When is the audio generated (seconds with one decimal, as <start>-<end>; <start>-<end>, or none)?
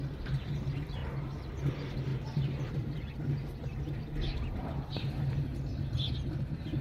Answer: 0.0-1.0; 1.7-3.7; 4.4-5.5; 6.3-6.8